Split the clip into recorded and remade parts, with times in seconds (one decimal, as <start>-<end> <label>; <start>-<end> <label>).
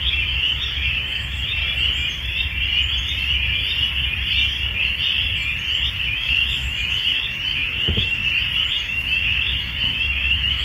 0.0-1.6 remade; 1.6-5.9 recorded; 5.9-8.2 remade; 8.2-8.7 recorded; 8.7-10.6 remade